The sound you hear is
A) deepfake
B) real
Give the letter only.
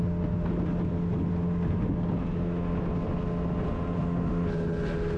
B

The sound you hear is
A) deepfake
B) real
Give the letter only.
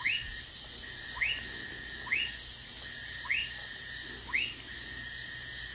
B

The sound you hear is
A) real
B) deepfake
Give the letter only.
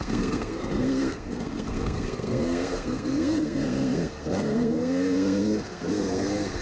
B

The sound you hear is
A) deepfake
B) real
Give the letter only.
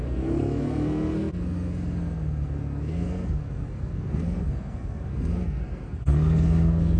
A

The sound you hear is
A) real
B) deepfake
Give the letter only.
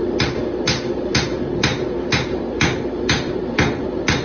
A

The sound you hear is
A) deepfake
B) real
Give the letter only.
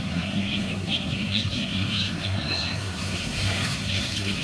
A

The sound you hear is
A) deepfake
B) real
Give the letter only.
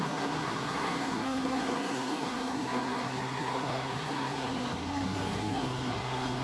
A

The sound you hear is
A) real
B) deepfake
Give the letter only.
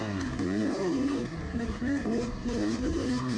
B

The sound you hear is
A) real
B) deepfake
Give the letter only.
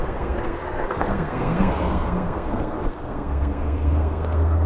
B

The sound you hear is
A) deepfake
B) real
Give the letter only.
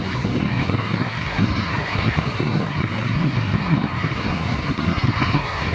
A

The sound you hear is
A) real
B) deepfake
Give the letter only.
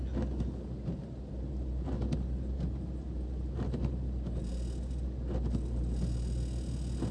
A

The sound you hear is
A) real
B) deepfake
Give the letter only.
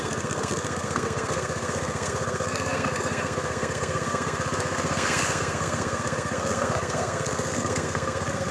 B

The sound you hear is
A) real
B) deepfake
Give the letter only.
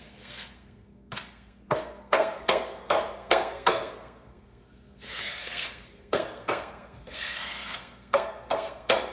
B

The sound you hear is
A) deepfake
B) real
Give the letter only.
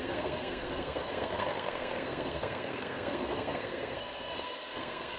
A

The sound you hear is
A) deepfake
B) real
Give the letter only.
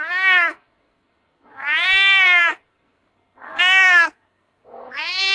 A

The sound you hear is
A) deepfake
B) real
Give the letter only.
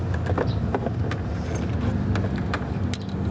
B